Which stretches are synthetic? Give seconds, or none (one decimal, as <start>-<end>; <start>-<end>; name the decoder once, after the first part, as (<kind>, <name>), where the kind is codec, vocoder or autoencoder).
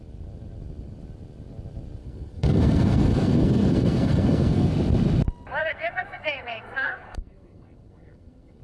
2.0-4.7 (codec, SNAC); 5.6-8.6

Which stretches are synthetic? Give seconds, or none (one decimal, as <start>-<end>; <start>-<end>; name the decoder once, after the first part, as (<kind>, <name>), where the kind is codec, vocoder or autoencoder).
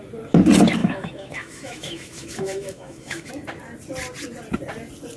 0.8-3.3 (autoencoder, DAC-VAE)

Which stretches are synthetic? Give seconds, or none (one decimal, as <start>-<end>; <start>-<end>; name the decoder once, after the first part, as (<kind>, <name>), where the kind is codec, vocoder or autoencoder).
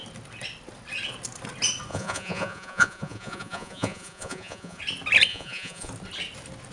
1.9-4.8 (vocoder, Vocos); 5.3-5.9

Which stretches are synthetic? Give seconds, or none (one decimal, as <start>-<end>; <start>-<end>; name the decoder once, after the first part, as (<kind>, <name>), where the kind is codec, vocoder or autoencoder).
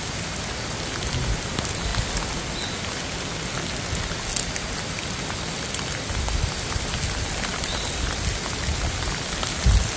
none